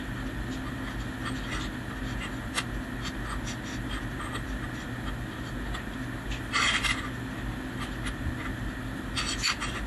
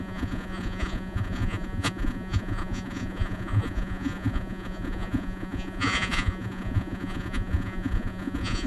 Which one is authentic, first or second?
first